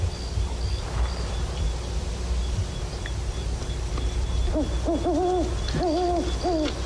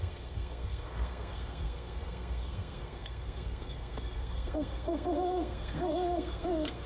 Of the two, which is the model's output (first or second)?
second